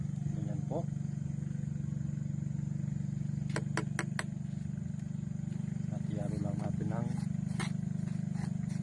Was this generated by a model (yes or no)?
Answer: no